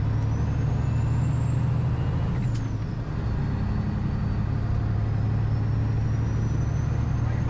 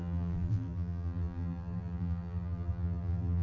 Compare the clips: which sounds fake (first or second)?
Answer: second